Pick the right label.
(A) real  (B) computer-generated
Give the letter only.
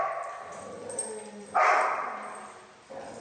A